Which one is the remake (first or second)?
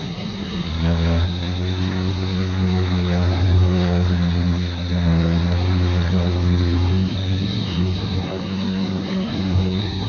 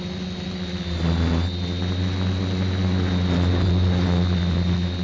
first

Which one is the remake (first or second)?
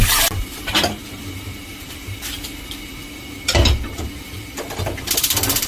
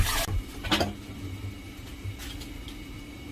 first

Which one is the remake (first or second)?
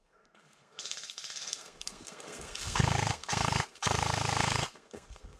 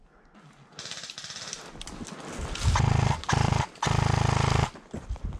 first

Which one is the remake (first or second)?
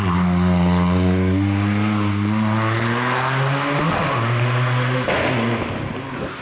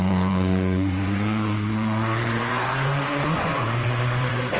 second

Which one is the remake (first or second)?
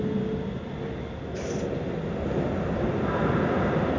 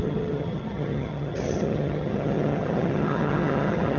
second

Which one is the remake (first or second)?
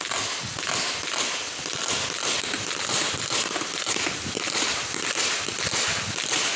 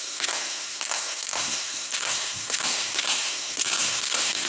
second